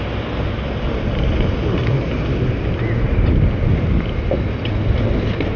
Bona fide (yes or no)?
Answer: yes